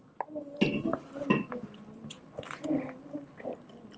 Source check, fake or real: real